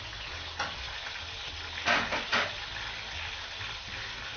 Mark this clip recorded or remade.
recorded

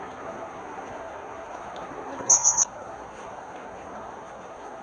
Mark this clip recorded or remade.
remade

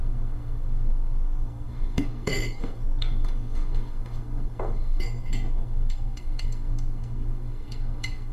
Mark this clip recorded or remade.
remade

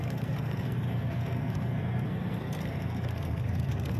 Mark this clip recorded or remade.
remade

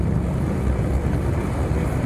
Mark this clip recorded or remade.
recorded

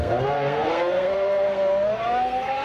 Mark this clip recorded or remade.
remade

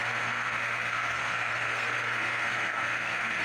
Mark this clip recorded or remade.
remade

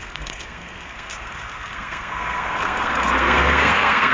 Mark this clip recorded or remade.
remade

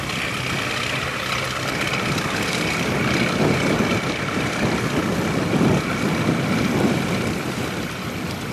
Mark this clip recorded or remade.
recorded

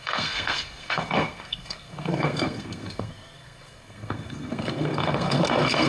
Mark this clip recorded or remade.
remade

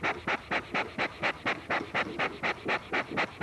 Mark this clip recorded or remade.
recorded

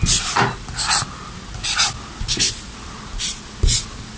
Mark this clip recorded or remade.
recorded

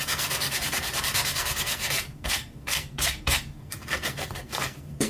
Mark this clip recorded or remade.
remade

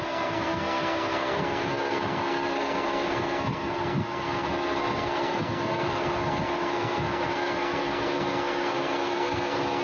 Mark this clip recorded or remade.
remade